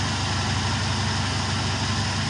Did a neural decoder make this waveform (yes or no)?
no